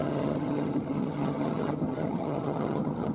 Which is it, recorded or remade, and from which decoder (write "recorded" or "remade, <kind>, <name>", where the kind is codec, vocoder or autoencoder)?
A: remade, vocoder, HiFi-GAN